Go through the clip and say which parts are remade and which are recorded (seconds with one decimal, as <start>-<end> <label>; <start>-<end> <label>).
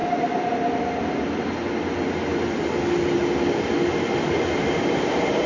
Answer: 0.0-5.5 recorded